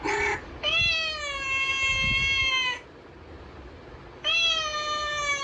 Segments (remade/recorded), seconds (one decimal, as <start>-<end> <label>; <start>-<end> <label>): 0.0-5.4 recorded